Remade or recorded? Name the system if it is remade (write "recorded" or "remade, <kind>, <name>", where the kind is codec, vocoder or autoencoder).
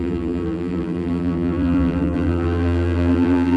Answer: remade, vocoder, BigVGAN v2